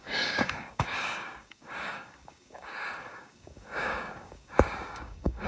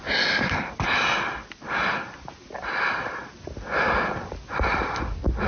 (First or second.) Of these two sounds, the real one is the second